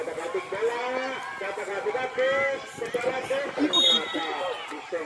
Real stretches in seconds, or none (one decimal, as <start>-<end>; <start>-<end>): 0.0-5.1